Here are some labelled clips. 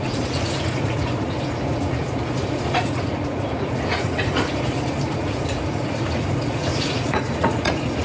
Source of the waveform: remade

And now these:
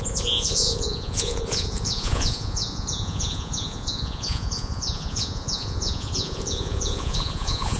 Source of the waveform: remade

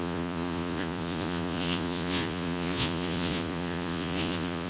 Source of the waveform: remade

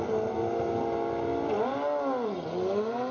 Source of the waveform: recorded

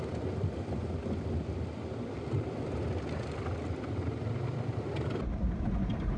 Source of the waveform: recorded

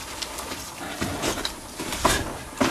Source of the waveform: recorded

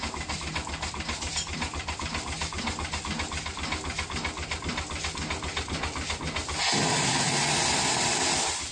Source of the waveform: recorded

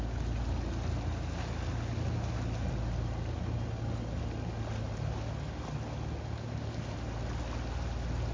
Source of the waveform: recorded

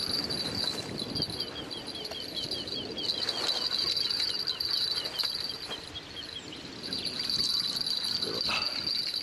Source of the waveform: recorded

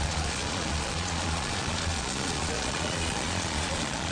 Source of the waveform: remade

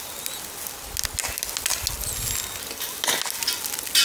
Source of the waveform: recorded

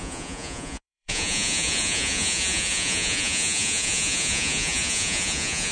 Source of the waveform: remade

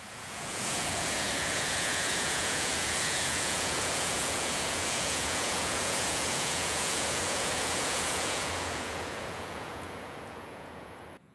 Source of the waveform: remade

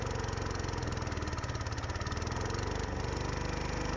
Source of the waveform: recorded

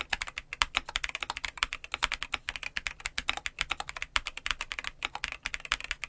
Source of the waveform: recorded